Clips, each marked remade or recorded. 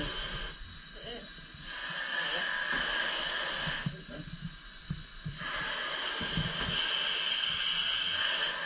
recorded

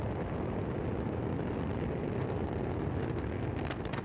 recorded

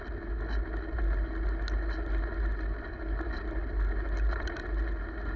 recorded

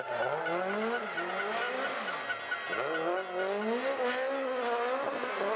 recorded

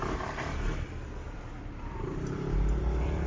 remade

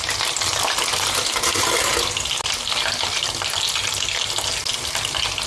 recorded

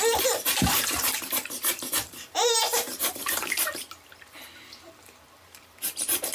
remade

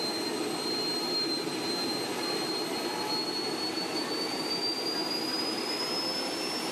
recorded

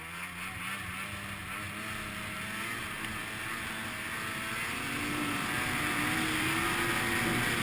recorded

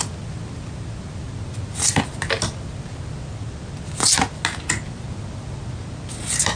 recorded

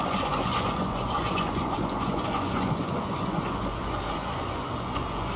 remade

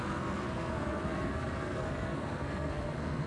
remade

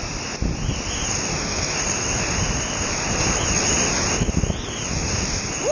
recorded